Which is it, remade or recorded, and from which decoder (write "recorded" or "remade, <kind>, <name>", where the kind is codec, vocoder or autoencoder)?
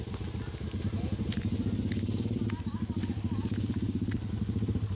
recorded